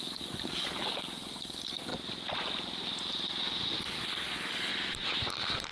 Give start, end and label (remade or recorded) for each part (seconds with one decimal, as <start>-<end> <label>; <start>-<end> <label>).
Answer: 0.0-1.9 remade; 1.9-3.8 recorded; 3.8-4.7 remade; 4.7-5.7 recorded